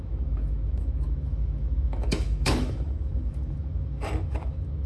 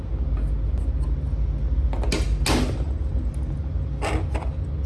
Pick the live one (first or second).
second